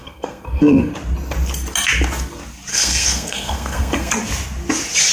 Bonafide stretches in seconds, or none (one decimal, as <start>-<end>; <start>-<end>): 0.9-2.7; 4.1-5.1